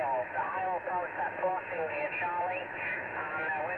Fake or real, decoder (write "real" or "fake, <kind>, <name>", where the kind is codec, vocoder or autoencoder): fake, autoencoder, DAC-VAE